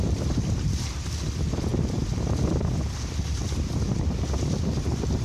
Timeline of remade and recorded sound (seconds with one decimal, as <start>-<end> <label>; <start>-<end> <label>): 0.0-5.2 recorded